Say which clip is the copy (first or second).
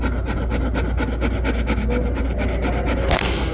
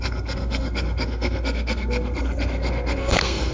second